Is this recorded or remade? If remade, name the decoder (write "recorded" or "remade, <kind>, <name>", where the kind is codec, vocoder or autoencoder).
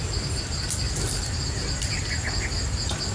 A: recorded